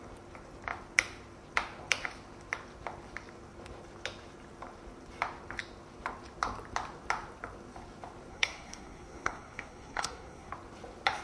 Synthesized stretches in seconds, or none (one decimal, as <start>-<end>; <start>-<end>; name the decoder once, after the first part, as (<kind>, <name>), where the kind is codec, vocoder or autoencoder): 8.3-10.5 (codec, SNAC)